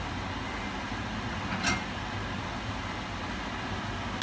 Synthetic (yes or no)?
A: no